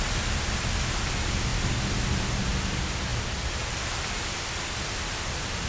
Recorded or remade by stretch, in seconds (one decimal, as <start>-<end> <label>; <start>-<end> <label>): 0.0-5.7 recorded